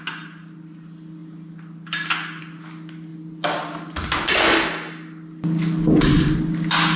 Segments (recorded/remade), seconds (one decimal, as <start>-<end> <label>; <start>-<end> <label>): 0.0-7.0 recorded